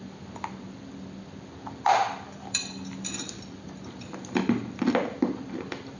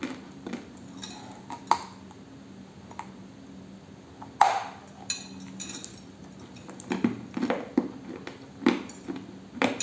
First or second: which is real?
second